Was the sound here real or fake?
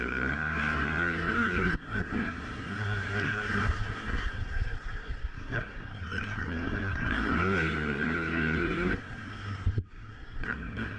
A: fake